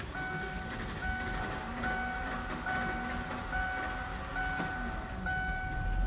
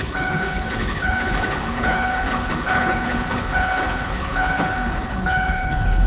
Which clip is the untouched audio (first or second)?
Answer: first